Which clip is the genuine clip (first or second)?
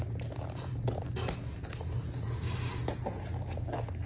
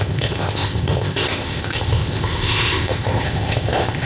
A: first